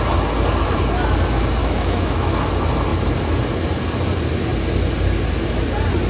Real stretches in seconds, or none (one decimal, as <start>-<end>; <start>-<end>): 0.0-1.6; 2.5-6.1